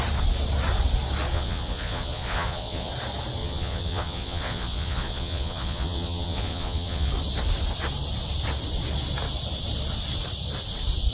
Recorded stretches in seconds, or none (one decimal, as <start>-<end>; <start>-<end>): 0.0-1.3; 2.9-3.4; 7.1-11.1